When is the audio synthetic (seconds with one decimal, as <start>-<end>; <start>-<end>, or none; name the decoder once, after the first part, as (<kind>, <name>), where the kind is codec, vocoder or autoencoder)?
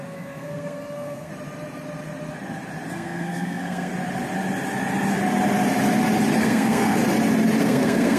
0.0-1.3 (codec, SNAC); 2.9-3.9; 6.4-7.0; 7.6-8.2